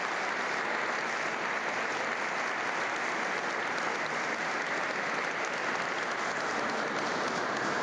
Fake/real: real